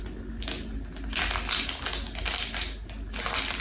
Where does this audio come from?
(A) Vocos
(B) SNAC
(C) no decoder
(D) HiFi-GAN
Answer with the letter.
C